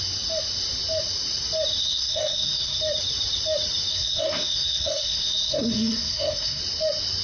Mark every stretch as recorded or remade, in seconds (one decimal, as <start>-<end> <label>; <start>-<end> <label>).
0.0-1.8 recorded; 1.8-2.8 remade; 2.8-3.9 recorded; 3.9-6.6 remade; 6.6-7.2 recorded